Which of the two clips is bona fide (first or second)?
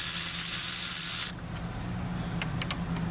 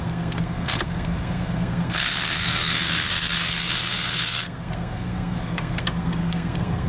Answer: first